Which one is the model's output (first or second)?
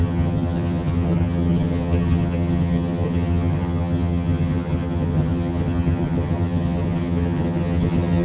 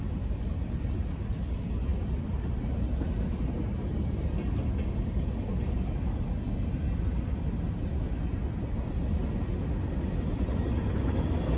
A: first